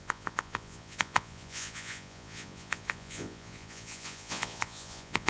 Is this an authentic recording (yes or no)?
no